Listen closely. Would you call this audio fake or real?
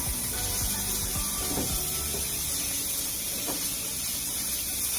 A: fake